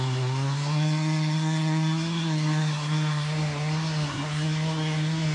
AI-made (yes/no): yes